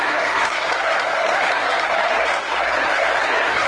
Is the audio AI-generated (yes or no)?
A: yes